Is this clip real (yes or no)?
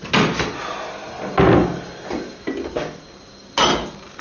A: yes